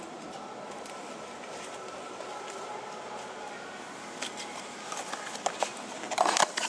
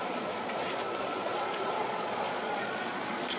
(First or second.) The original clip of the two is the first